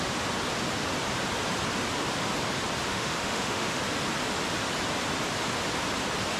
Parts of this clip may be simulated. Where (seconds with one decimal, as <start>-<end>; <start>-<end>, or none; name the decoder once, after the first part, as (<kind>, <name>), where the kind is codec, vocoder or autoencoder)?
2.9-3.8 (autoencoder, DAC-VAE)